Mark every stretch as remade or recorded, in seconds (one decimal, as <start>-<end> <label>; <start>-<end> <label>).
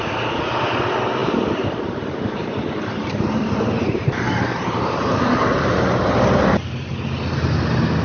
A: 0.0-1.2 recorded; 1.2-5.9 remade; 5.9-8.0 recorded